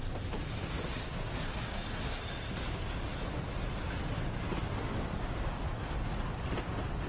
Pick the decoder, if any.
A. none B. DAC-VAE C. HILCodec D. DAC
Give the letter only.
A